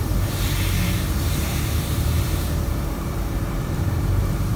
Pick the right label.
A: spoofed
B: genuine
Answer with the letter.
A